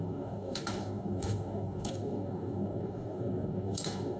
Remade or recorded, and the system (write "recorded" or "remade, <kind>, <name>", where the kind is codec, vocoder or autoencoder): remade, codec, DAC